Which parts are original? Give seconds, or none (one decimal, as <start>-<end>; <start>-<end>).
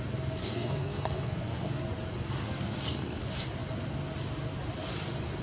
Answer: 0.0-0.4; 1.8-2.4; 3.2-5.4